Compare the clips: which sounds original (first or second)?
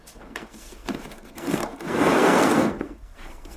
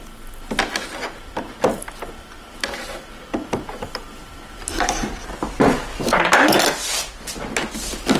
second